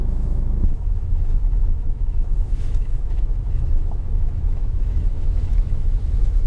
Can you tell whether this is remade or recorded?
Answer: remade